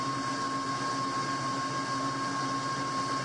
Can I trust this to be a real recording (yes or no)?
yes